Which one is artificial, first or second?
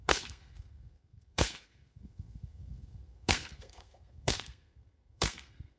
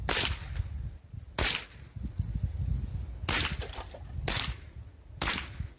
first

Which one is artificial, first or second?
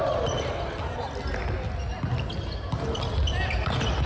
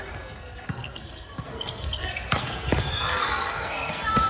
second